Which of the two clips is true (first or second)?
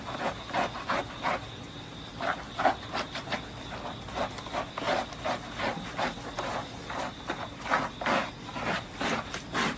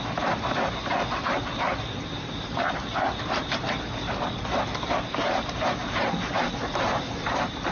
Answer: first